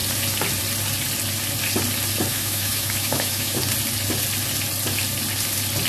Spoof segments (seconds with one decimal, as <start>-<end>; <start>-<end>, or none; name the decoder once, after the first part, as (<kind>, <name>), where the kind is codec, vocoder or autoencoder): 2.3-3.6 (autoencoder, DAC-VAE)